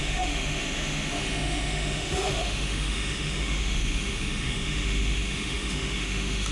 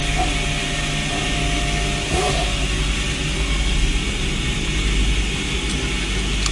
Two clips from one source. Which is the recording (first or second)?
second